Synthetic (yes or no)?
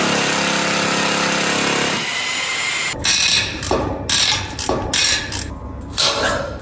no